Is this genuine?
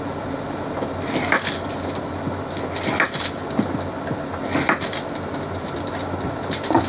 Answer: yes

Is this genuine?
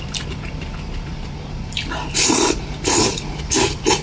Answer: yes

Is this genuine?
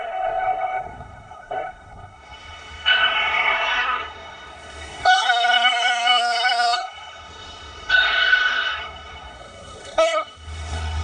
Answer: no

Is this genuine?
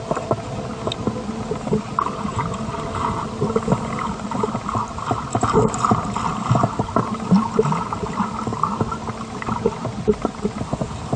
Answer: yes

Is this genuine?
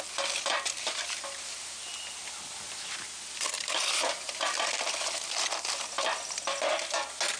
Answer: yes